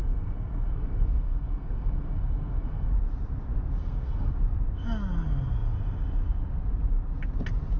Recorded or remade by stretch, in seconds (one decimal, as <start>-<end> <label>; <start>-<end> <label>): 0.0-2.9 remade; 2.9-3.8 recorded; 3.8-4.3 remade; 4.3-7.8 recorded